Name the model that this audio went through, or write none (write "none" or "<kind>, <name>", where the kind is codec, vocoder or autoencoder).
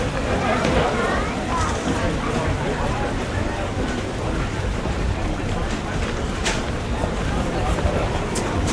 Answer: vocoder, BigVGAN v2